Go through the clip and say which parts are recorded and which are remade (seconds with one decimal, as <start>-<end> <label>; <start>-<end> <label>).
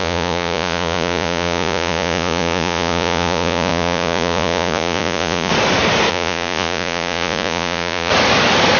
0.0-5.5 remade; 5.5-6.1 recorded; 6.1-8.1 remade; 8.1-8.8 recorded